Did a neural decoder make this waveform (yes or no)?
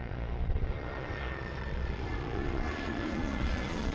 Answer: yes